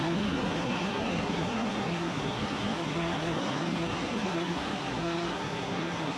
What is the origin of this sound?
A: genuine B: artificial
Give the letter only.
B